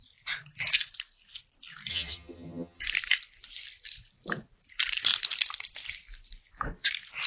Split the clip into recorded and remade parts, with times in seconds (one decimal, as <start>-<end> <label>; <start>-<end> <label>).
0.0-1.9 recorded; 1.9-2.8 remade; 2.8-7.3 recorded